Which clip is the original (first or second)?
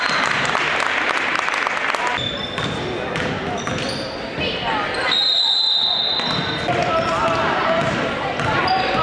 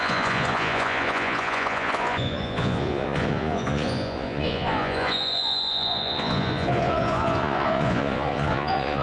first